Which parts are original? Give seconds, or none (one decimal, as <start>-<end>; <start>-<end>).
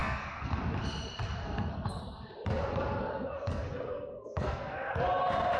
0.6-1.4; 2.0-3.0; 4.9-5.6